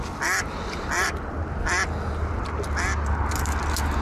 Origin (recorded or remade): recorded